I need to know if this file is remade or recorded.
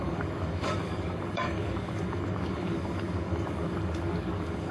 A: remade